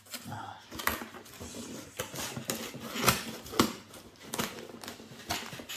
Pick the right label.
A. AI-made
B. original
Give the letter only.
B